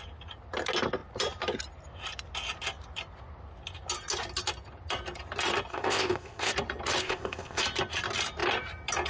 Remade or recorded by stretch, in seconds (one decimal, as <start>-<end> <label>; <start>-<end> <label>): 0.0-5.7 recorded; 5.7-6.5 remade; 6.5-7.0 recorded; 7.0-7.6 remade; 7.6-9.1 recorded